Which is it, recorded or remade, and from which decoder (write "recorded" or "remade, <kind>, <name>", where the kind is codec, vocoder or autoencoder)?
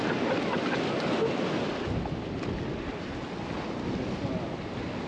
recorded